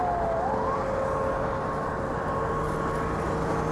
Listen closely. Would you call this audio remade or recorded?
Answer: recorded